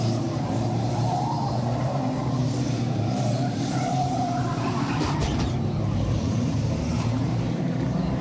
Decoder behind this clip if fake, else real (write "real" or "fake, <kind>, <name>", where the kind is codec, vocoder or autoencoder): fake, vocoder, BigVGAN v2